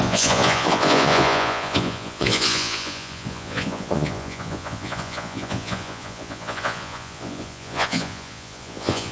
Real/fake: fake